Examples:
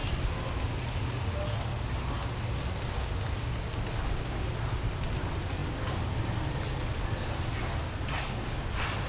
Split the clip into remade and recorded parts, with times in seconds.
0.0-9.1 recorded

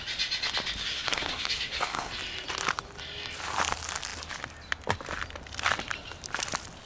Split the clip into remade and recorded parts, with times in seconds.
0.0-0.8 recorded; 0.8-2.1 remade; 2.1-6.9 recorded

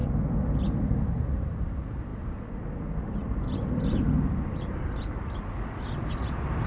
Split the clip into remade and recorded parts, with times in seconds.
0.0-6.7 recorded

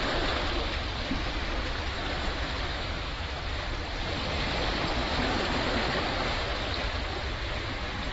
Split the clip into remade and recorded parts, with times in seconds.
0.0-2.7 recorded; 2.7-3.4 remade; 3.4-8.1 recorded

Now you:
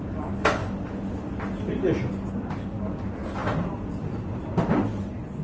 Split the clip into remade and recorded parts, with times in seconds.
0.0-5.4 recorded

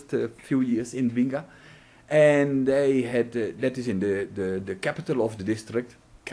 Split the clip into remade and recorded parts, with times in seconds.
0.0-0.7 recorded; 0.7-1.3 remade; 1.3-6.3 recorded